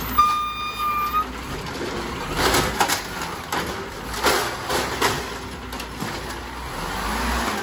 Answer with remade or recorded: recorded